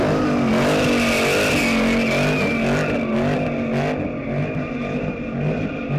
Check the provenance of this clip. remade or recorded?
recorded